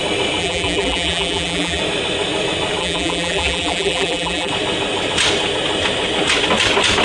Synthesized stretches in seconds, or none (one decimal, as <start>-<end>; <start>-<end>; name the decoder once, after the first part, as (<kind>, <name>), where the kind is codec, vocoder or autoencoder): 0.4-1.8 (vocoder, BigVGAN v2); 2.8-4.5